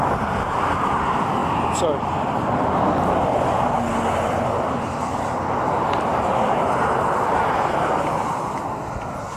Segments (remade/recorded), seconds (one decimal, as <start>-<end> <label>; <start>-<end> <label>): 0.0-9.4 recorded